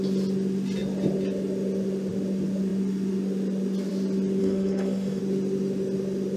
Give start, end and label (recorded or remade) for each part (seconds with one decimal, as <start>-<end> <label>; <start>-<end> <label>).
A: 0.0-4.4 recorded; 4.4-5.2 remade; 5.2-6.4 recorded